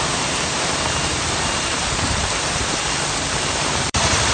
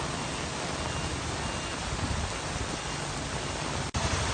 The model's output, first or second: first